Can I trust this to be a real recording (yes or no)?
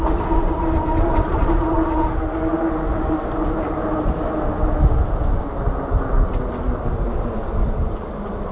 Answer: yes